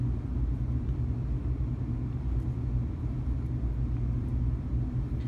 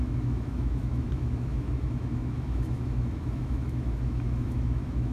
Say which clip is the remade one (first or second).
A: second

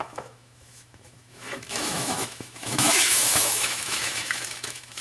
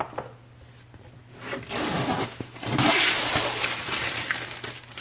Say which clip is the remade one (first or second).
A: first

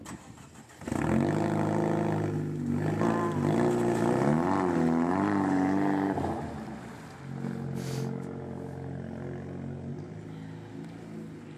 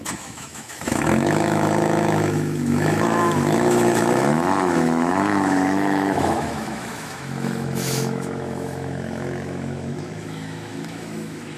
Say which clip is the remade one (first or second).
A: second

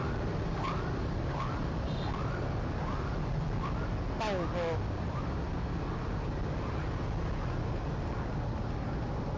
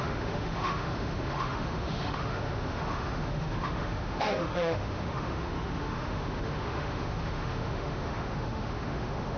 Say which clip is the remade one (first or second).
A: second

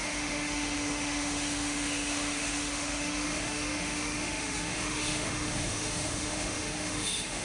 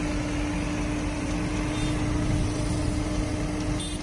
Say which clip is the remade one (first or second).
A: first